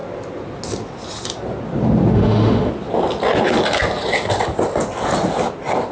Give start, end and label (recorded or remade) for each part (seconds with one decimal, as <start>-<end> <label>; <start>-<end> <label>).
0.0-2.1 recorded; 2.1-2.7 remade; 2.7-5.9 recorded